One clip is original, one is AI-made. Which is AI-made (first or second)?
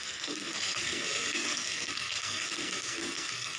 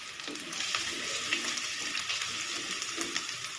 first